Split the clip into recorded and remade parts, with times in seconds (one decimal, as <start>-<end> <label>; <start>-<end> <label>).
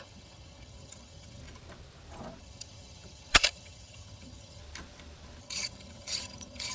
0.0-1.4 remade; 1.4-2.4 recorded; 2.4-4.6 remade; 4.6-5.4 recorded; 5.4-6.7 remade